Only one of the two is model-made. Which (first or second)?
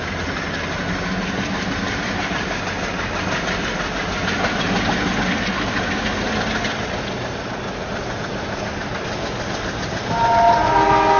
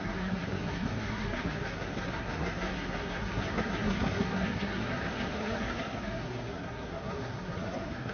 second